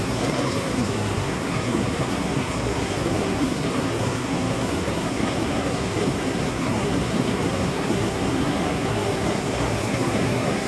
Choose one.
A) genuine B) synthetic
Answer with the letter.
B